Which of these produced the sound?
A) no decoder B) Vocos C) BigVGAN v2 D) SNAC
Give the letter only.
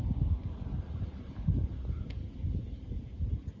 A